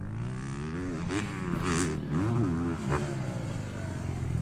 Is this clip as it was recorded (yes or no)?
yes